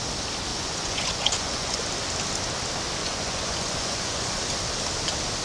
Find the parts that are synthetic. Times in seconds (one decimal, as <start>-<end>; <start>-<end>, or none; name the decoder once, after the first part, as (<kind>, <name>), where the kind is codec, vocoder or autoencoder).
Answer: 0.5-1.8 (vocoder, Vocos); 3.0-4.4